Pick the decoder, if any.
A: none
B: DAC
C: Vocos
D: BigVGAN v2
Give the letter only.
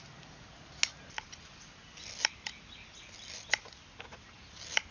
A